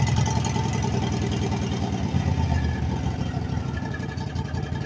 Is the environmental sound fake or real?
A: real